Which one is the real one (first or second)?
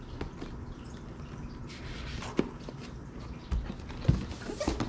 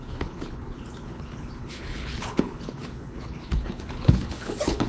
first